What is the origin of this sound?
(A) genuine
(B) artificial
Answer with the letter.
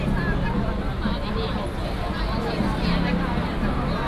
A